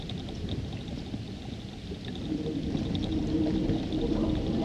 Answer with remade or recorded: recorded